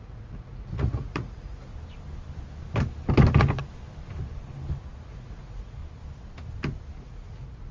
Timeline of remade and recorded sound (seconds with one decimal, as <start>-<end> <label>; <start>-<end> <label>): 0.0-1.7 remade; 1.7-5.1 recorded; 5.1-5.8 remade; 5.8-7.0 recorded; 7.0-7.7 remade